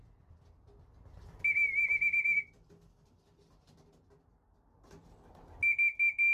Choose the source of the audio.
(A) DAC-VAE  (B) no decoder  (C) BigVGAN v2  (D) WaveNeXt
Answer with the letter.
B